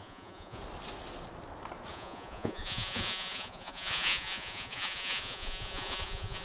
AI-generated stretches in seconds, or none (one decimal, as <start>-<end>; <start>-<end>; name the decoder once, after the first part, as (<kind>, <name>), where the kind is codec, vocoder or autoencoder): 0.0-0.6 (vocoder, Vocos); 1.9-6.4